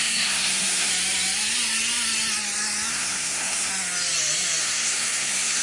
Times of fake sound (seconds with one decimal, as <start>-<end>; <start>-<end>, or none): 0.0-0.9; 2.9-3.7; 4.6-5.6